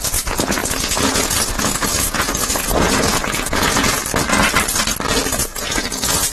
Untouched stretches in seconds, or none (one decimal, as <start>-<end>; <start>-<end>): 4.0-5.3